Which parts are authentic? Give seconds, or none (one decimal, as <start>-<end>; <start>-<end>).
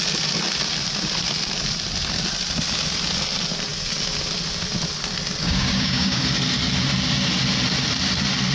0.0-5.4; 6.2-8.5